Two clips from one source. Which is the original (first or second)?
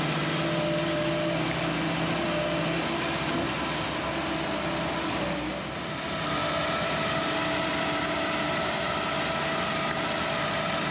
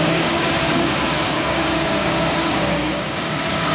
first